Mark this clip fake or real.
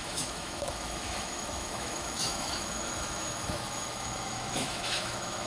fake